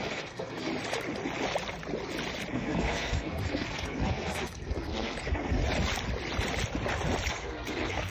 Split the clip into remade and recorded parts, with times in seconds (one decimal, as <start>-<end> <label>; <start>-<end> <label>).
0.0-0.7 remade; 0.7-2.5 recorded; 2.5-5.6 remade; 5.6-7.3 recorded; 7.3-8.1 remade